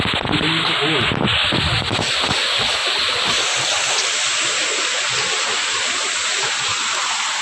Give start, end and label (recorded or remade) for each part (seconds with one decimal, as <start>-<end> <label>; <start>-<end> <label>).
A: 0.0-7.4 recorded